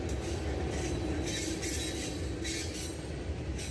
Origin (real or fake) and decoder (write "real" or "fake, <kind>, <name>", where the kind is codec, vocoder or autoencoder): real